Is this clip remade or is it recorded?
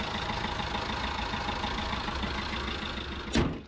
recorded